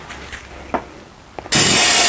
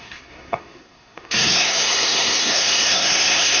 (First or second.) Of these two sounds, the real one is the first